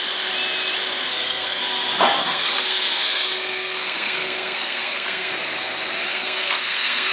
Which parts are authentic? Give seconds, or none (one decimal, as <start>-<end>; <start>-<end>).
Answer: 0.0-1.1; 1.6-2.2; 5.3-6.1